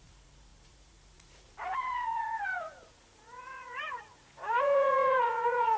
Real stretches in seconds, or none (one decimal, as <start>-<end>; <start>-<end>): none